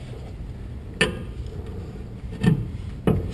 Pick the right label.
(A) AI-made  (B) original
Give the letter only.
A